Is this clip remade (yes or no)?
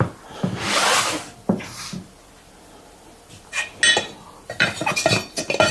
no